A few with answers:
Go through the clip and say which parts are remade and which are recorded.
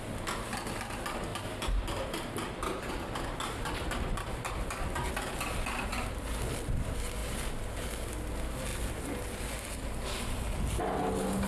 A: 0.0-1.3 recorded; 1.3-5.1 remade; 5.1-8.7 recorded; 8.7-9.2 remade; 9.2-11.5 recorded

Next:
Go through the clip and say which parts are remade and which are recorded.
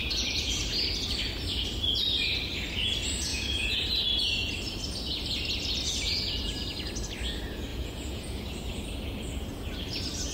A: 0.0-0.6 remade; 0.6-3.3 recorded; 3.3-3.8 remade; 3.8-7.7 recorded; 7.7-8.4 remade; 8.4-10.3 recorded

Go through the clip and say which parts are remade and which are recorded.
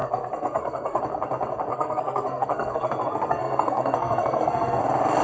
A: 0.0-1.0 remade; 1.0-1.7 recorded; 1.7-4.8 remade; 4.8-5.2 recorded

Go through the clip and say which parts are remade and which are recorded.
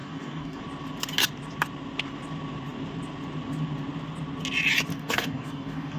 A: 0.0-0.6 remade; 0.6-4.9 recorded; 4.9-6.0 remade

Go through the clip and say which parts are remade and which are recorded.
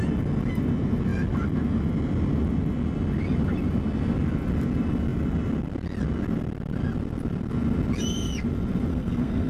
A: 0.0-8.9 recorded; 8.9-9.5 remade